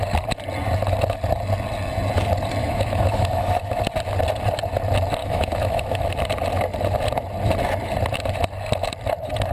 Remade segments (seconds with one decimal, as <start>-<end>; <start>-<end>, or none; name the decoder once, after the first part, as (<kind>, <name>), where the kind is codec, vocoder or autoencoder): 2.6-3.8 (autoencoder, DAC-VAE); 5.2-6.1